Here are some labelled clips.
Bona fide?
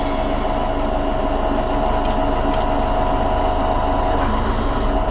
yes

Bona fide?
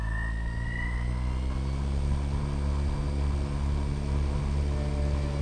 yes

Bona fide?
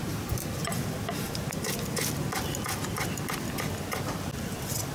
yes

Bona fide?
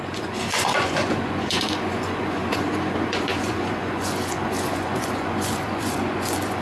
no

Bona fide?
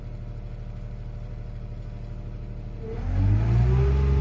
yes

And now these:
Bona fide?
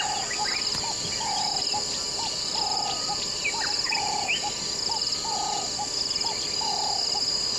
yes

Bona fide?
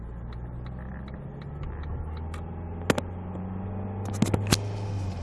yes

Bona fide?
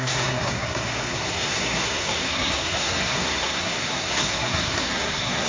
no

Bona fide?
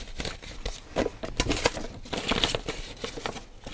yes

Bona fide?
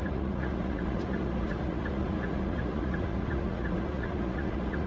no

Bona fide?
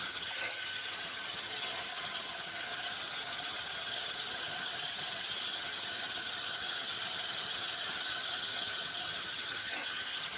no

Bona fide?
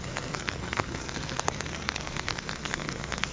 no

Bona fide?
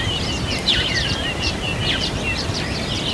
no